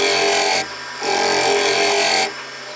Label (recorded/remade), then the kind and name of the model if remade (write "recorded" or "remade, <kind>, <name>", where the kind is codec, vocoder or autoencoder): recorded